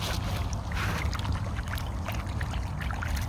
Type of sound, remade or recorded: recorded